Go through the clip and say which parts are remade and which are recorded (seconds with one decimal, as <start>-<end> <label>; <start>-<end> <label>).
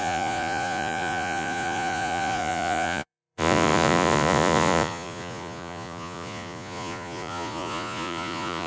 0.0-8.7 remade